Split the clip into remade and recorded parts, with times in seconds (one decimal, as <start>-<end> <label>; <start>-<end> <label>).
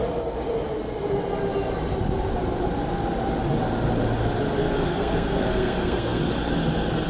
0.0-4.6 recorded; 4.6-6.2 remade; 6.2-7.1 recorded